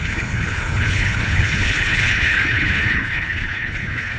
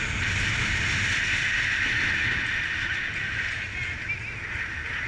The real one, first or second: second